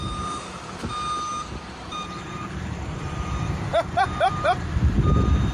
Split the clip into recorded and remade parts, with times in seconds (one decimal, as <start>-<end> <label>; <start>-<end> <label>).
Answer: 0.0-0.8 remade; 0.8-1.6 recorded; 1.6-5.5 remade